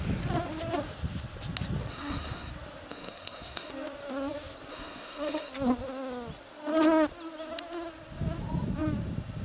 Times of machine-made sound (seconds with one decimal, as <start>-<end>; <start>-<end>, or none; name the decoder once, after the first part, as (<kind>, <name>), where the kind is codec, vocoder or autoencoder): 1.9-2.5 (codec, SNAC); 2.9-3.7; 4.7-5.5